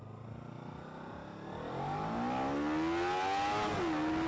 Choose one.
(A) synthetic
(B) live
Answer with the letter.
B